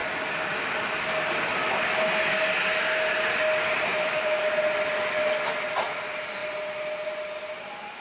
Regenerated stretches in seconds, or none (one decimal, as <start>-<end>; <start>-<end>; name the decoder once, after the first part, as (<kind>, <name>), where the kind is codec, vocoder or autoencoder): 3.9-4.5 (autoencoder, DAC-VAE)